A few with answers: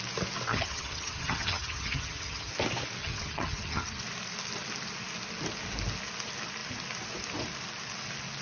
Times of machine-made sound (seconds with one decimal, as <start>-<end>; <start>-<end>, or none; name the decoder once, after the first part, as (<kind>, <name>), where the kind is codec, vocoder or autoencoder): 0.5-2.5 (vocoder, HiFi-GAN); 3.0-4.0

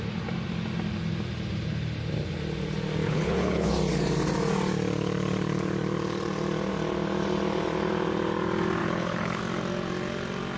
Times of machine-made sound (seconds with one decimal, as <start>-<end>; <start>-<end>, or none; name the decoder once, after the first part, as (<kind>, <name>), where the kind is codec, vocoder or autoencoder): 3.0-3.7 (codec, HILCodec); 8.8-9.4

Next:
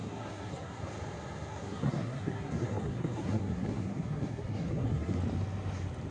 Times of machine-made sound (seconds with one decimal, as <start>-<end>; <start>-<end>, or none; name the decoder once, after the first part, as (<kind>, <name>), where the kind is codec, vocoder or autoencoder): 0.0-0.8 (codec, SNAC); 1.5-5.2

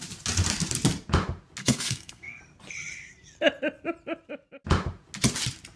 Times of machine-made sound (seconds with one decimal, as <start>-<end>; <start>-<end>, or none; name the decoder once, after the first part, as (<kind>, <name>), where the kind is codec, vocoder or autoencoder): 1.6-2.4 (codec, SNAC)

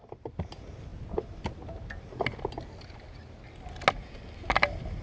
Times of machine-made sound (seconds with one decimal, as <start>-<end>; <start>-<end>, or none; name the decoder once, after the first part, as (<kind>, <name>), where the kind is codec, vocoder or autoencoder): none